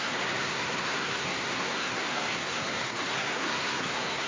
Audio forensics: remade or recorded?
remade